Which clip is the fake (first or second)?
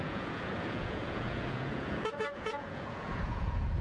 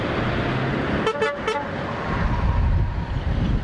first